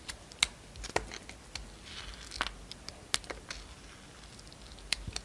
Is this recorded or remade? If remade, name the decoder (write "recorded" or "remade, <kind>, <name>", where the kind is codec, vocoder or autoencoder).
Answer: recorded